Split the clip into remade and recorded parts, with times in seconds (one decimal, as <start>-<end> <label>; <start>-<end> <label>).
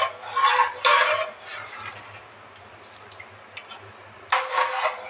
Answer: 0.0-5.1 recorded